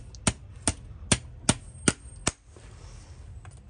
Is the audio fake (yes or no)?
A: no